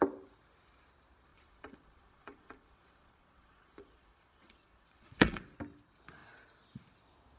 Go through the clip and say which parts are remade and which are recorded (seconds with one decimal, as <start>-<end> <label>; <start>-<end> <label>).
0.0-1.3 recorded; 1.3-5.4 remade; 5.4-7.4 recorded